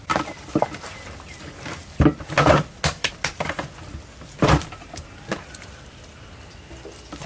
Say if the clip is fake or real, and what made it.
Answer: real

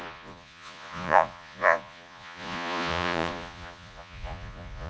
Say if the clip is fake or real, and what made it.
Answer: fake, vocoder, Vocos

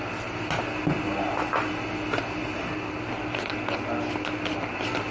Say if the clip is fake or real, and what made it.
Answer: real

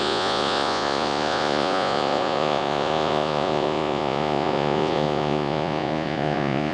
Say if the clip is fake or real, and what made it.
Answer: fake, vocoder, Vocos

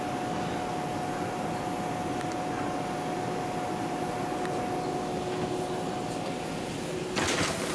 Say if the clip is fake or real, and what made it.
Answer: real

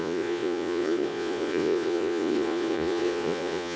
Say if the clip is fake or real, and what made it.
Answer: fake, vocoder, Vocos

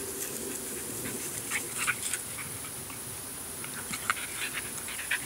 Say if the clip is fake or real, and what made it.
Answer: real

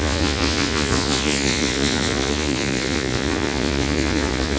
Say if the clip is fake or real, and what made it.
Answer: fake, vocoder, Vocos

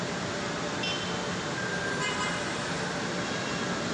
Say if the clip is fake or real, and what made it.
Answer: real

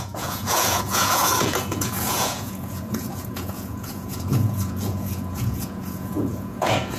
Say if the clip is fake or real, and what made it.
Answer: fake, vocoder, Vocos